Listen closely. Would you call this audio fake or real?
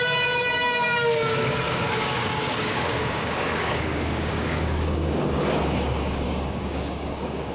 fake